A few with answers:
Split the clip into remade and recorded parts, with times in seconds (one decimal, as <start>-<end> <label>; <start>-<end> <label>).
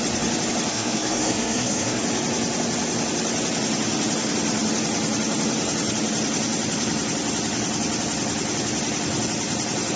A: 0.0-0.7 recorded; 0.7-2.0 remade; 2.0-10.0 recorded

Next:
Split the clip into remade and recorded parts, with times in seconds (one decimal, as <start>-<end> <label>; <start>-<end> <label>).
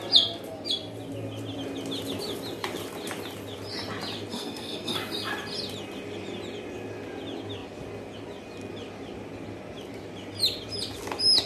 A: 0.0-4.3 recorded; 4.3-4.9 remade; 4.9-11.5 recorded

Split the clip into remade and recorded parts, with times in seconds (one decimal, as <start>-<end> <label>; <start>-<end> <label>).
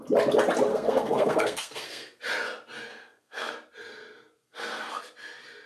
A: 0.0-0.7 recorded; 0.7-2.2 remade; 2.2-2.9 recorded; 2.9-3.5 remade; 3.5-4.4 recorded; 4.4-5.0 remade; 5.0-5.7 recorded